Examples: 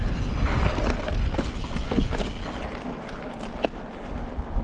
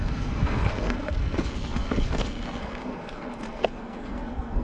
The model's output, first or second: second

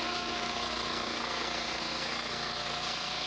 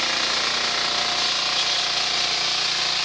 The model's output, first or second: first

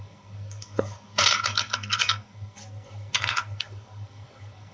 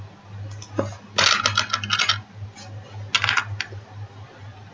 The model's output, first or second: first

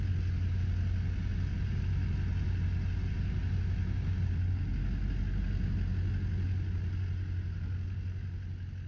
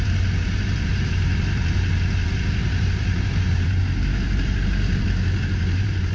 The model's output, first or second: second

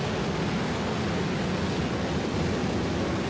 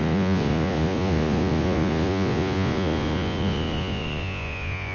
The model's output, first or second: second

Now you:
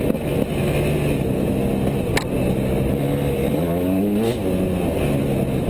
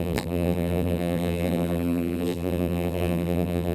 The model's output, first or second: second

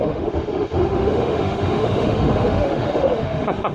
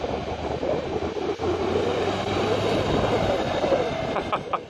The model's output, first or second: first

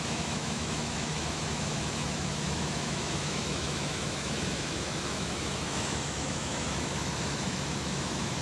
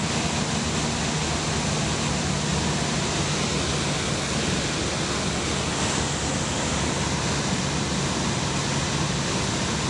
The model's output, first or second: first